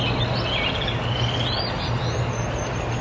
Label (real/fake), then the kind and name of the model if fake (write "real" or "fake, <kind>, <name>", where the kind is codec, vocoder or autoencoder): real